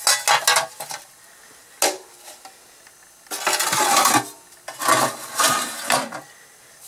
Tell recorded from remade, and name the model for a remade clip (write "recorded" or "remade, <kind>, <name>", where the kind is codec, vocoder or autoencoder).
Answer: recorded